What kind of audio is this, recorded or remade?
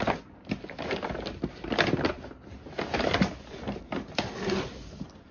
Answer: recorded